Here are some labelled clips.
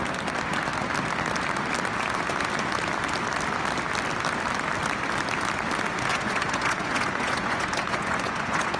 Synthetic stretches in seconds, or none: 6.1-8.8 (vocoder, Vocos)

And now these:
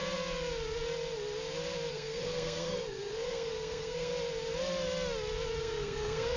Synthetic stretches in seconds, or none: 1.9-4.1 (codec, SNAC); 5.6-6.4

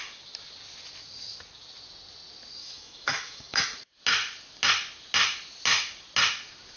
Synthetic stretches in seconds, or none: 2.6-3.6 (autoencoder, DAC-VAE)

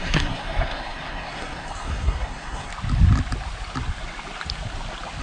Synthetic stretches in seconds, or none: 0.0-2.7 (codec, SNAC)

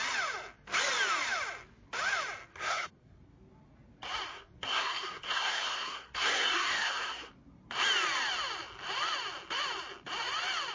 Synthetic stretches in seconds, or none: 2.5-3.2 (codec, SNAC); 4.3-7.3

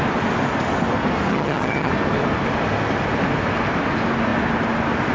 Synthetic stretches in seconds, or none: 1.3-1.9 (vocoder, HiFi-GAN)

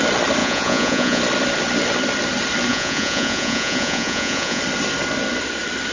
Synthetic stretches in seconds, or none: 0.4-1.2 (vocoder, Vocos); 2.7-4.6

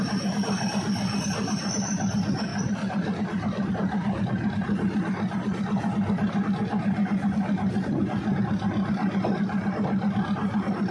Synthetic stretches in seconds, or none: none